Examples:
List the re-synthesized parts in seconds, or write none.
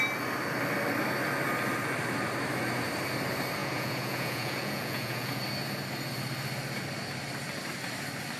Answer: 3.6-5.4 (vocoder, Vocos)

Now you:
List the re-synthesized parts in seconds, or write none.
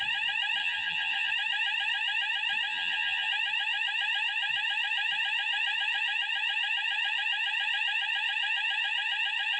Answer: 0.6-1.3 (vocoder, HiFi-GAN); 2.7-3.3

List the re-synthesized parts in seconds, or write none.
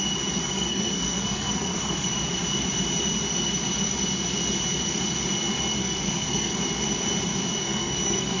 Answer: 0.4-2.1 (codec, SNAC); 5.8-6.6; 7.6-8.4